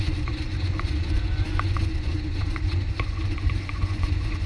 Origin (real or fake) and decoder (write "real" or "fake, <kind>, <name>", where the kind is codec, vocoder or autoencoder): fake, vocoder, Vocos